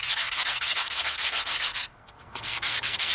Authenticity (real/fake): fake